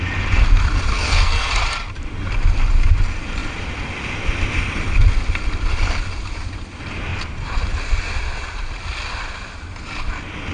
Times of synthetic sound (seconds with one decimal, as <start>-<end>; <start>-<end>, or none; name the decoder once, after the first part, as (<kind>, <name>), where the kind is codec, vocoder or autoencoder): 0.9-1.5 (codec, SNAC)